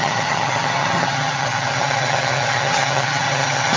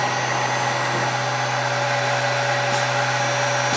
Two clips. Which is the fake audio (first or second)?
first